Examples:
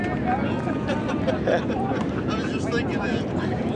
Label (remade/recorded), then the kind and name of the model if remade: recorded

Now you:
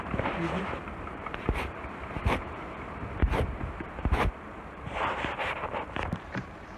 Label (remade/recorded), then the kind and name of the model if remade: remade, vocoder, BigVGAN v2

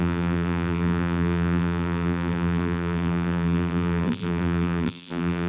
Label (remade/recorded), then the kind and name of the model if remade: remade, vocoder, BigVGAN v2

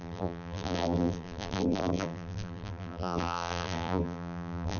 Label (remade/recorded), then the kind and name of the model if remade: remade, vocoder, BigVGAN v2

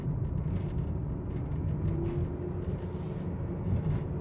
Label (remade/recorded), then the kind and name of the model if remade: recorded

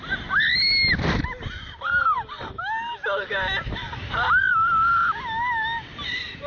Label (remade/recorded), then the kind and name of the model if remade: recorded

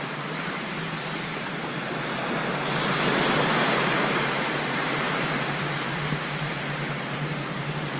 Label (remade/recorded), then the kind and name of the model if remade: remade, vocoder, BigVGAN v2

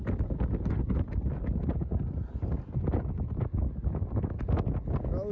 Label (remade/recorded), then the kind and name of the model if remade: recorded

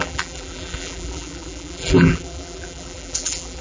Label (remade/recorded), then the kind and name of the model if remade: remade, vocoder, BigVGAN v2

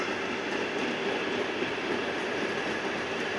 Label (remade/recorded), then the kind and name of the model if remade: recorded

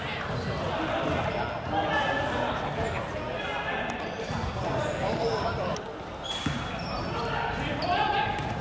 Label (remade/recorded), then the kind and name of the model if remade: recorded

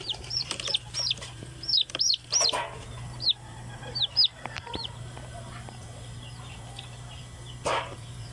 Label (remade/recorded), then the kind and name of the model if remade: remade, vocoder, BigVGAN v2